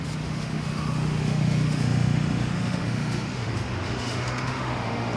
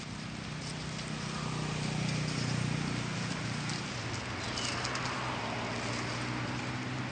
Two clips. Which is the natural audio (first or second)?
second